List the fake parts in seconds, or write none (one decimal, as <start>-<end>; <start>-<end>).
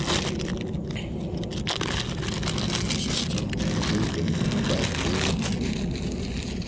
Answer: 4.1-4.7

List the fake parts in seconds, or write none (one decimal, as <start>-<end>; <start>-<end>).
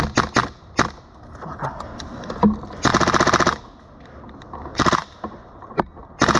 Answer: 2.9-3.6; 4.7-5.8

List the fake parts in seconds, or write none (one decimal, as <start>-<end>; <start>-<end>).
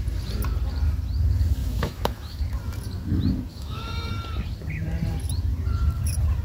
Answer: 1.6-2.4; 3.5-4.1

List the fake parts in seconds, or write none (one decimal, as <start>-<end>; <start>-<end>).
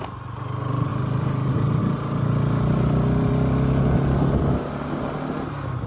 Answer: 0.9-1.8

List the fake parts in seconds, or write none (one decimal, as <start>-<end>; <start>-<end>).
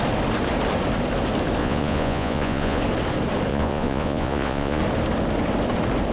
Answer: 1.6-2.8; 3.5-4.8